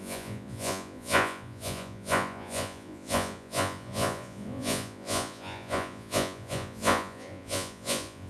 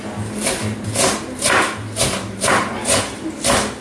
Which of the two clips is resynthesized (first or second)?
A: first